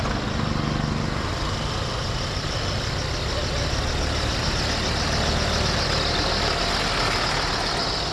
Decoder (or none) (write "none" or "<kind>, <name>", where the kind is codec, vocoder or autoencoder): none